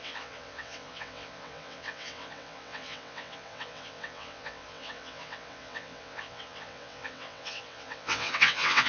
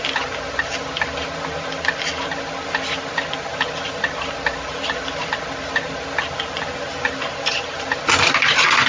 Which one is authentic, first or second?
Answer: second